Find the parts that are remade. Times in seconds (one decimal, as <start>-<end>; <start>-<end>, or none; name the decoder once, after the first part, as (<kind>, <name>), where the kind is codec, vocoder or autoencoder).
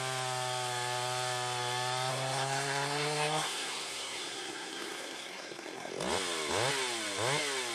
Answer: 2.1-5.9 (codec, SNAC)